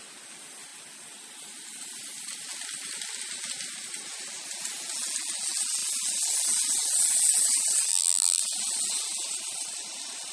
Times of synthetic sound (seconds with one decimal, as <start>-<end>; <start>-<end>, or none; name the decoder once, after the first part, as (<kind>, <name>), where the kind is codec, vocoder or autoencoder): 7.9-8.4 (vocoder, BigVGAN v2)